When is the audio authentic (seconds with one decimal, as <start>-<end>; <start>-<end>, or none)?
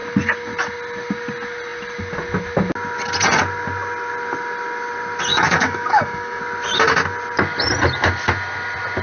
0.0-5.3; 6.4-9.0